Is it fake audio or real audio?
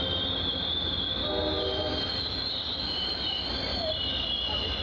real